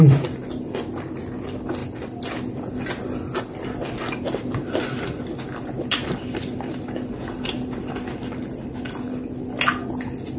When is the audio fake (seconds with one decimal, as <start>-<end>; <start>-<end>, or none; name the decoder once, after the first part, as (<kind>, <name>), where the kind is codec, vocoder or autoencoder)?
none